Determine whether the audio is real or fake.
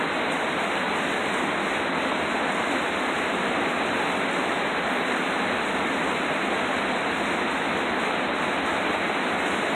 real